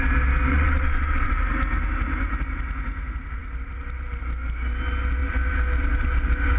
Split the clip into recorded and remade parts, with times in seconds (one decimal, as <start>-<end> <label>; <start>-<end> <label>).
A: 0.0-0.5 recorded; 0.5-1.3 remade; 1.3-6.6 recorded